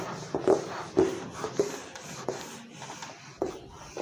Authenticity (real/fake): real